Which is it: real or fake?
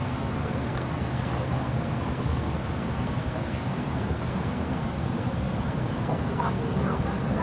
fake